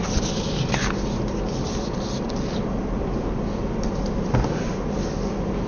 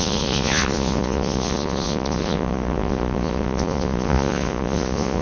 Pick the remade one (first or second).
second